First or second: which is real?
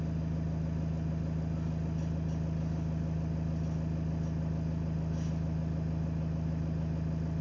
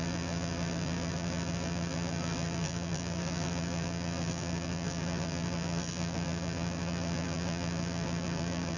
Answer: first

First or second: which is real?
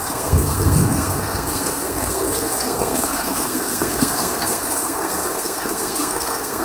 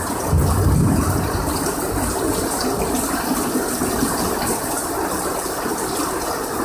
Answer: second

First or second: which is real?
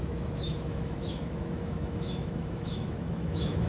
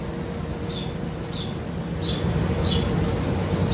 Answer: second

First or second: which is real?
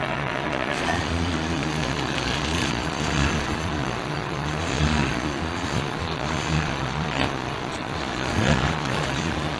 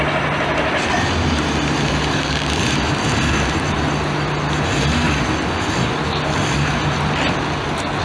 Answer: second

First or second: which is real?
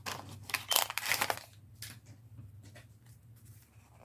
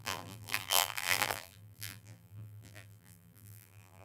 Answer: first